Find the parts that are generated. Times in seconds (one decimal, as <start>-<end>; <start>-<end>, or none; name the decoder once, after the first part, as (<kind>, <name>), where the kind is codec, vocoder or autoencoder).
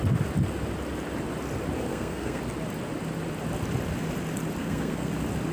1.9-2.4 (codec, SNAC); 4.6-5.1